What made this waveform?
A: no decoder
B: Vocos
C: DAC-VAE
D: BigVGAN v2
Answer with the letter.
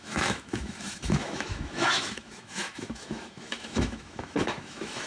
C